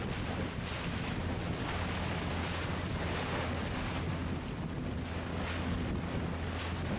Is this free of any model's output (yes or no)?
yes